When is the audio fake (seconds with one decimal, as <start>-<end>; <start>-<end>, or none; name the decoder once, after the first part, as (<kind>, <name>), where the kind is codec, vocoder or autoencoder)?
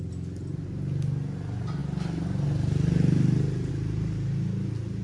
none